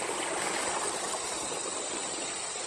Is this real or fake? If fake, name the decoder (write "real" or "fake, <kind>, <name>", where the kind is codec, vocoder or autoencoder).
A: fake, vocoder, BigVGAN v2